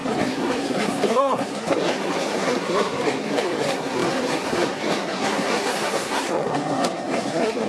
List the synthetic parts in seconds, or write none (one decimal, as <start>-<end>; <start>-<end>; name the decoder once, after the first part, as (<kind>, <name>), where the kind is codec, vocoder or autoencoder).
0.0-7.7 (codec, SNAC)